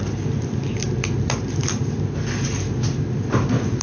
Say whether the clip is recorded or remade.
recorded